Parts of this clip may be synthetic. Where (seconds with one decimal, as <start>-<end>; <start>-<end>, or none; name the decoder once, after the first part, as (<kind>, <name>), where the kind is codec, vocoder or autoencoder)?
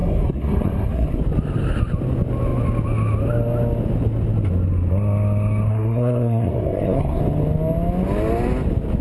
0.0-1.2 (codec, SNAC); 5.7-7.2